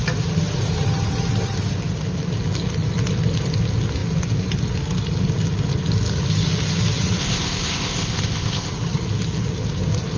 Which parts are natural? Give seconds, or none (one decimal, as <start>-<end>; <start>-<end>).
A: 0.0-7.2; 8.7-10.2